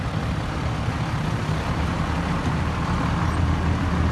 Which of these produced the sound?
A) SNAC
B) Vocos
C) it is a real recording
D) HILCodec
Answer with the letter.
C